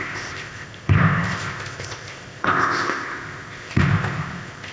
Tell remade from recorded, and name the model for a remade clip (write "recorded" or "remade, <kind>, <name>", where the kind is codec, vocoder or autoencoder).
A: remade, codec, ZipCodec